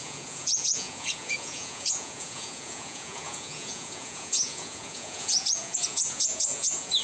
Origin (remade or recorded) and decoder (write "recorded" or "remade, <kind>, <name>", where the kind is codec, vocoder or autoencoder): remade, vocoder, Vocos